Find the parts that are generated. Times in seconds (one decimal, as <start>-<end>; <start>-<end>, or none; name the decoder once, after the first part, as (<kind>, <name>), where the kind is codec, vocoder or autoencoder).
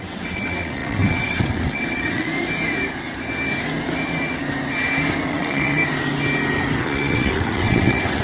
0.0-2.3 (vocoder, WaveNeXt); 5.3-5.8; 6.8-8.2